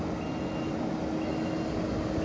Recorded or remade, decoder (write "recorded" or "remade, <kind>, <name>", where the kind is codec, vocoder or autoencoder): recorded